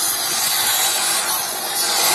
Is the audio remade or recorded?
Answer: remade